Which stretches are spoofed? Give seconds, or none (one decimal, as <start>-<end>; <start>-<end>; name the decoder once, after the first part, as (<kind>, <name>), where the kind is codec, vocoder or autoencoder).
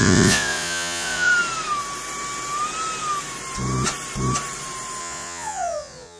0.0-1.3 (vocoder, Vocos); 5.0-6.2